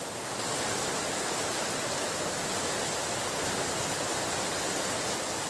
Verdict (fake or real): real